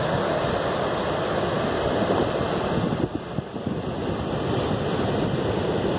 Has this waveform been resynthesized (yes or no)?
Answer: no